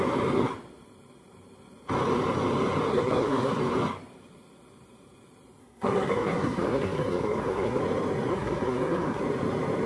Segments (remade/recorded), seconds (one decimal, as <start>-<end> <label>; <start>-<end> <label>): 0.0-2.9 recorded; 2.9-3.6 remade; 3.6-5.6 recorded; 5.6-7.8 remade; 7.8-8.3 recorded; 8.3-9.2 remade; 9.2-9.9 recorded